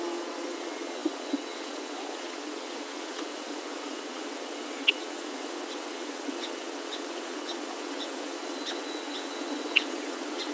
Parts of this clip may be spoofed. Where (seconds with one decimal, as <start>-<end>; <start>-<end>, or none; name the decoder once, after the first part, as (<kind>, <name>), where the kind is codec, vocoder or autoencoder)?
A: 0.0-10.5 (vocoder, WaveNeXt)